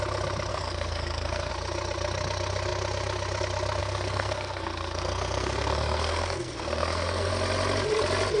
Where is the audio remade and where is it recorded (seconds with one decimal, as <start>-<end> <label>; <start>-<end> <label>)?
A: 0.0-0.5 recorded; 0.5-1.5 remade; 1.5-3.8 recorded; 3.8-7.3 remade; 7.3-8.4 recorded